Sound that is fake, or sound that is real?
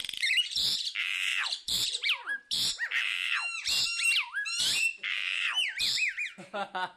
fake